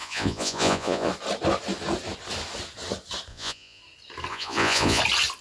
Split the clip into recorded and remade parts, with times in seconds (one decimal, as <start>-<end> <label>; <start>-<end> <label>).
0.0-1.1 remade; 1.1-3.3 recorded; 3.3-3.8 remade; 3.8-4.3 recorded; 4.3-5.0 remade; 5.0-5.4 recorded